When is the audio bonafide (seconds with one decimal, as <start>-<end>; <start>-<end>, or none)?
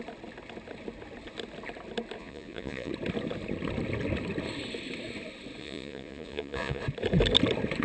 0.0-2.2; 2.9-5.6; 6.8-7.8